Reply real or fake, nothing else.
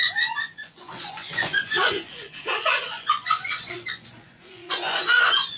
fake